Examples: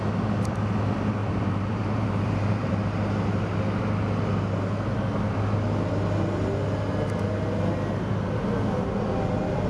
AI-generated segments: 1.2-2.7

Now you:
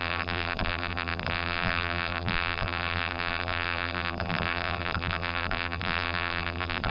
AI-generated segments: 0.0-6.9

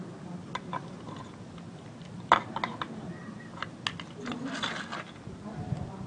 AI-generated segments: none

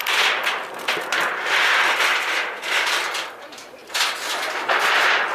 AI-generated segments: none

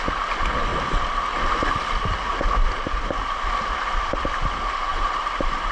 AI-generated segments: 4.9-5.7

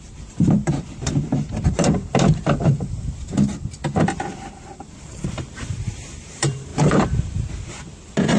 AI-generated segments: 0.0-3.5; 4.7-8.4